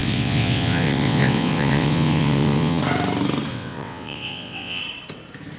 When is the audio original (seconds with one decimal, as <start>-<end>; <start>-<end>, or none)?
2.8-3.5; 4.8-5.6